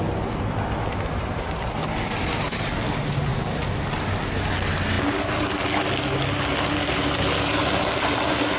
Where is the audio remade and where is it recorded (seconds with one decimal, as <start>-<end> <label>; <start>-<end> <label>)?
0.0-8.6 recorded